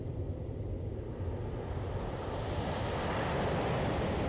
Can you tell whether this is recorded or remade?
recorded